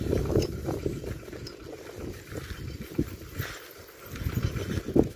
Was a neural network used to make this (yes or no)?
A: no